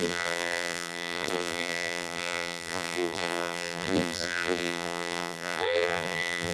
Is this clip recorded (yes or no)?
no